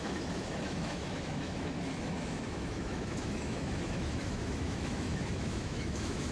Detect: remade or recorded remade